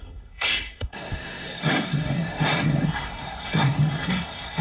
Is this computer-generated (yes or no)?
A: yes